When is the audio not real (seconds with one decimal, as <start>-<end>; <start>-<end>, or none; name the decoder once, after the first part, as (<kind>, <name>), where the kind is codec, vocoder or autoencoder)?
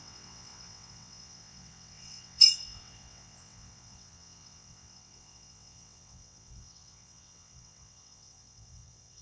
0.0-9.2 (vocoder, WaveNeXt)